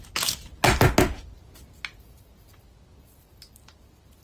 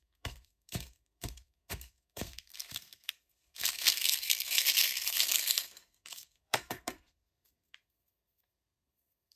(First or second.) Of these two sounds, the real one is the first